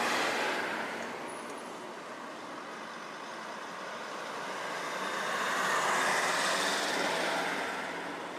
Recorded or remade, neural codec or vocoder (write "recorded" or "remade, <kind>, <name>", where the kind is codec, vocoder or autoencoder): recorded